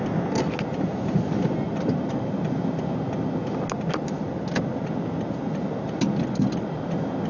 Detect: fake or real real